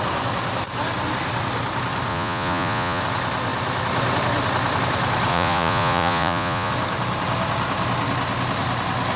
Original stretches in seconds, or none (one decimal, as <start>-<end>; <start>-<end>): 0.0-2.1; 3.0-5.3; 6.7-9.2